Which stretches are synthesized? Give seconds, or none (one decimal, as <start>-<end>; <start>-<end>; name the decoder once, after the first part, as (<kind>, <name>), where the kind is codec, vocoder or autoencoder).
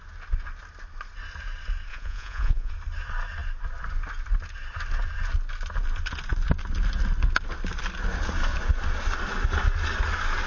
1.9-2.7 (vocoder, Vocos)